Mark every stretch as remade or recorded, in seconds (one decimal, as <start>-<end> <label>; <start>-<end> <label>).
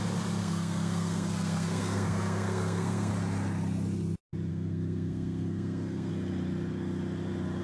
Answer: 0.0-0.4 recorded; 0.4-3.1 remade; 3.1-4.5 recorded; 4.5-6.1 remade; 6.1-7.6 recorded